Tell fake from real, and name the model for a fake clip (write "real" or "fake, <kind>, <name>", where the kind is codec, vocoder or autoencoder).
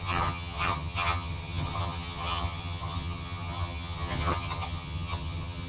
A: fake, vocoder, HiFi-GAN